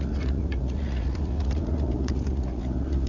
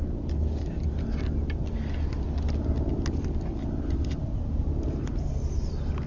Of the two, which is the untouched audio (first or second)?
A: second